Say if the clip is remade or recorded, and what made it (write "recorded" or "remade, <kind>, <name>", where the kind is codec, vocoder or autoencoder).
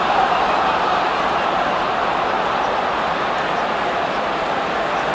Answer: recorded